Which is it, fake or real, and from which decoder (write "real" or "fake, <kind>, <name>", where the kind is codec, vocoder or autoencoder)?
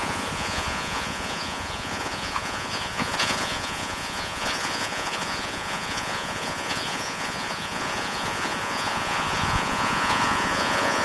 fake, vocoder, Vocos